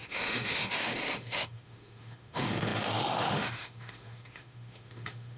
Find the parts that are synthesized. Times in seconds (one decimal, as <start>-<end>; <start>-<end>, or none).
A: 0.0-5.4